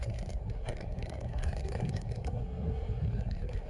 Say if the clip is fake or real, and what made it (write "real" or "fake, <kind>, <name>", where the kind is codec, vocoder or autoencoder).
fake, codec, SNAC